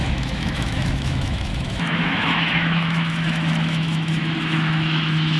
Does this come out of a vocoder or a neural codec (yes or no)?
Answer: yes